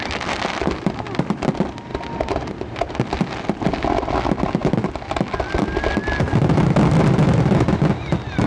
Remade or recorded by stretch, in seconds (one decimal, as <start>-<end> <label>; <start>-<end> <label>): 0.0-8.5 recorded